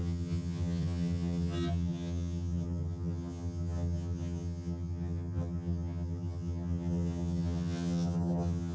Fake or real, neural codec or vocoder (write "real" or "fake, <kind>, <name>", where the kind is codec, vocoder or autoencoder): fake, vocoder, HiFi-GAN